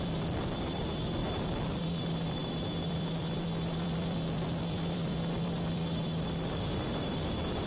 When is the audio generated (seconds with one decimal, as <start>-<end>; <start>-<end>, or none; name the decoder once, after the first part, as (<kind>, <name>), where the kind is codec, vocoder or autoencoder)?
0.0-7.7 (vocoder, BigVGAN v2)

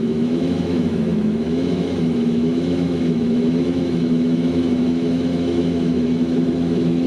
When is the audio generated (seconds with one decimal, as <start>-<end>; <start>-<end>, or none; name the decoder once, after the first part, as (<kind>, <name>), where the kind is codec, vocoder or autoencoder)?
0.0-7.1 (autoencoder, DAC-VAE)

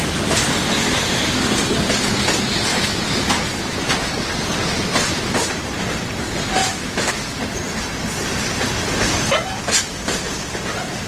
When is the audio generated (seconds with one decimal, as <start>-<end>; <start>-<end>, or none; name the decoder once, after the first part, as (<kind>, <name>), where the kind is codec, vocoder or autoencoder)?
0.7-1.4 (autoencoder, DAC-VAE); 2.7-3.8; 6.6-7.4

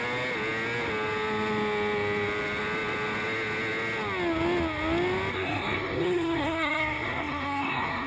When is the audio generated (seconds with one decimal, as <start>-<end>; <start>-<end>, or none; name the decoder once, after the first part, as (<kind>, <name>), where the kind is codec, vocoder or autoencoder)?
5.3-8.1 (codec, SNAC)

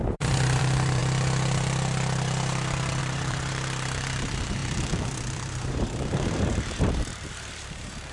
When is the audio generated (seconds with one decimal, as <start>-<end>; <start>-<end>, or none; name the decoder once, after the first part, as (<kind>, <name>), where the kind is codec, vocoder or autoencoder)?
0.0-1.0 (vocoder, BigVGAN v2); 3.0-8.1

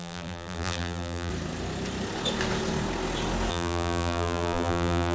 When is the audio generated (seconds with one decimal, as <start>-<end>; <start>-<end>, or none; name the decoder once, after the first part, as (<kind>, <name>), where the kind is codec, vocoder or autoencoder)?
0.0-1.3 (vocoder, BigVGAN v2); 3.5-5.1

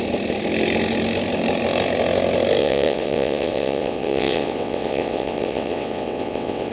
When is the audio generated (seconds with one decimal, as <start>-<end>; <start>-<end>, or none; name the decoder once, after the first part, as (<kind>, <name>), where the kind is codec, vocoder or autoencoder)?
2.6-6.7 (vocoder, WaveNeXt)

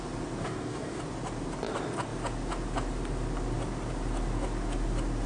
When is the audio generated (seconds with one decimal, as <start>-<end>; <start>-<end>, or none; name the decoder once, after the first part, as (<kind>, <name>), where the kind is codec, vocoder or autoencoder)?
0.4-1.0 (codec, DAC)